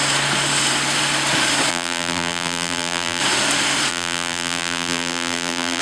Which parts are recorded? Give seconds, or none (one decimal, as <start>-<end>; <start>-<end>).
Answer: 0.0-1.7; 3.2-3.9